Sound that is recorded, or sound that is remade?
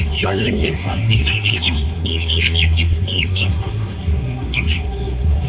remade